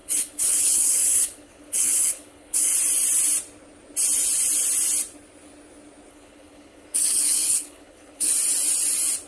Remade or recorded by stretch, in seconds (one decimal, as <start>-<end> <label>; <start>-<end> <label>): 0.0-2.7 remade; 2.7-6.1 recorded; 6.1-8.3 remade; 8.3-9.3 recorded